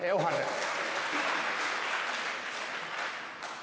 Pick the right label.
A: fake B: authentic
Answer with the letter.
B